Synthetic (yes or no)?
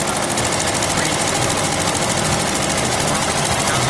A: no